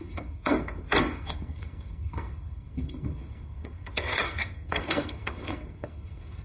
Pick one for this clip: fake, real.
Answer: fake